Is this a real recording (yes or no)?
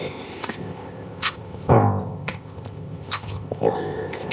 no